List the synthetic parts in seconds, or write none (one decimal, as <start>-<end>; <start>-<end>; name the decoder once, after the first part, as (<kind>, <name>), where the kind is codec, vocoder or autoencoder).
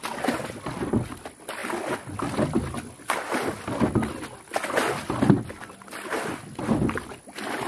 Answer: none